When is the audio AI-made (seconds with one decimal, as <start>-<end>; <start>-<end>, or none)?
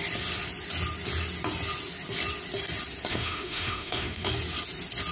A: 3.1-4.3